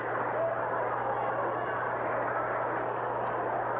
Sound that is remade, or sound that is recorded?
recorded